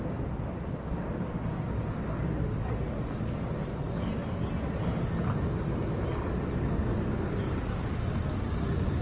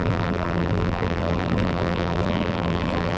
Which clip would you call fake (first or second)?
second